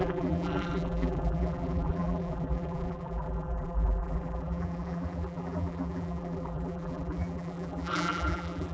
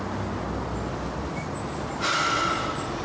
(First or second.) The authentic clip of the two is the second